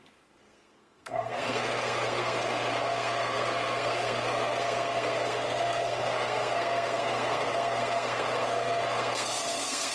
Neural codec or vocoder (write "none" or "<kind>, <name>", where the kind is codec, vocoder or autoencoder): codec, SNAC